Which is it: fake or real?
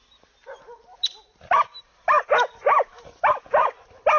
real